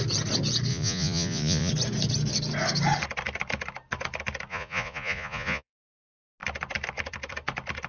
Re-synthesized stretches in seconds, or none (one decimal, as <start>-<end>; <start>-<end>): 0.7-1.7; 4.5-5.9